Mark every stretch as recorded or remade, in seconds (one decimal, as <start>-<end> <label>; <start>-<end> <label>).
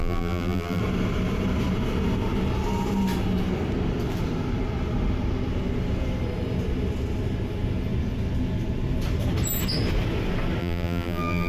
0.0-0.8 remade; 0.8-10.6 recorded; 10.6-11.5 remade